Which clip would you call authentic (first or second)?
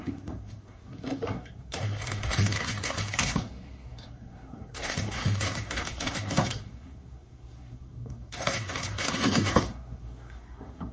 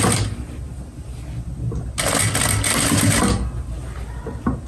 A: second